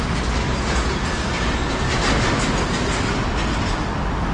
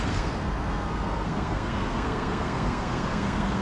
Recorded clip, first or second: first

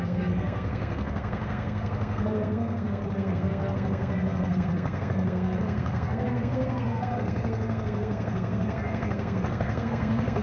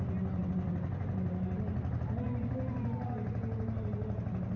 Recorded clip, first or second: second